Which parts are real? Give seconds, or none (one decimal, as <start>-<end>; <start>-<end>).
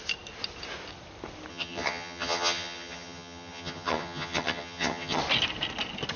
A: 0.0-1.5; 5.2-6.2